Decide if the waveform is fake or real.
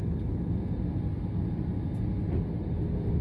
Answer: real